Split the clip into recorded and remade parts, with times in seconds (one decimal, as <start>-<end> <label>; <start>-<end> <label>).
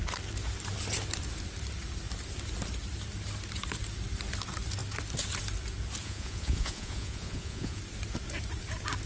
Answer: 0.0-6.0 recorded; 6.0-7.8 remade; 7.8-9.1 recorded